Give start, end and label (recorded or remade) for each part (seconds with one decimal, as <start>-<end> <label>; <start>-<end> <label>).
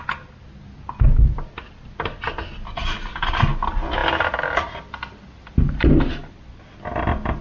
0.0-7.4 recorded